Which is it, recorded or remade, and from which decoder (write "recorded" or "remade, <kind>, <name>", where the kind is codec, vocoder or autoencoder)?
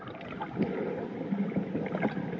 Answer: recorded